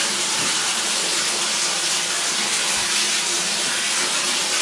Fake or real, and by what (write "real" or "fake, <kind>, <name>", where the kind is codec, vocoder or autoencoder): real